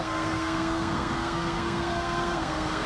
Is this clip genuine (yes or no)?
no